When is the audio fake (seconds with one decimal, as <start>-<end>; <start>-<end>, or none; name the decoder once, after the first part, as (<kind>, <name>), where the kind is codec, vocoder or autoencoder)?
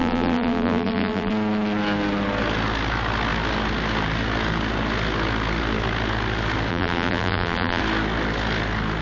0.0-1.3 (vocoder, BigVGAN v2); 6.7-7.8